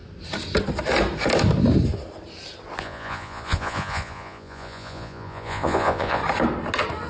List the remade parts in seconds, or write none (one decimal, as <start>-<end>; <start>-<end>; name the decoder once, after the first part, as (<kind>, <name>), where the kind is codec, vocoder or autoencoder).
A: 2.8-6.2 (vocoder, Vocos)